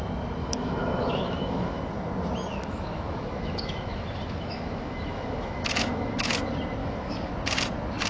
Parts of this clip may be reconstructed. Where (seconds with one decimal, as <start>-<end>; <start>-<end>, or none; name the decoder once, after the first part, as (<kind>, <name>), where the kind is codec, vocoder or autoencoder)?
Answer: 0.4-1.8 (autoencoder, DAC-VAE); 2.5-6.3; 6.8-7.3